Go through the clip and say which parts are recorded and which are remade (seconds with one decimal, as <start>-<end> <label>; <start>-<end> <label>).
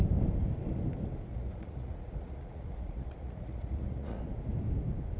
0.0-1.3 recorded; 1.3-4.2 remade; 4.2-5.2 recorded